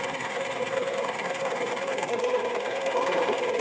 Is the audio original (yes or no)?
no